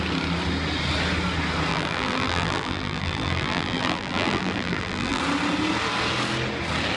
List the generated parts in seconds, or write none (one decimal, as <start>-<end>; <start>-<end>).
1.7-5.2